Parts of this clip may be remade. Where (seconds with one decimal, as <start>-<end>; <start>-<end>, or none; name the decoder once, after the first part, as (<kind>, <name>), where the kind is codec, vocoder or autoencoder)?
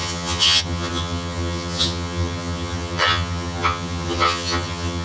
0.0-5.0 (vocoder, HiFi-GAN)